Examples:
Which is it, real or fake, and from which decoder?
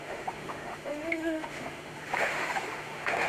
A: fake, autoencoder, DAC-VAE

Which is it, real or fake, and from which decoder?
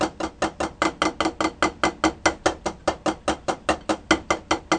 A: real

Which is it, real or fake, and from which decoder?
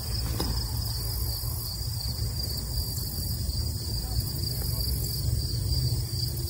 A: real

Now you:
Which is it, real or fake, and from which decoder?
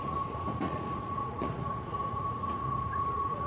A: fake, vocoder, Vocos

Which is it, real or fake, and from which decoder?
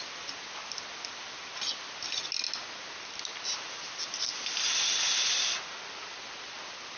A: real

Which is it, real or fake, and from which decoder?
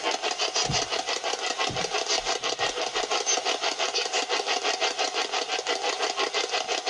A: real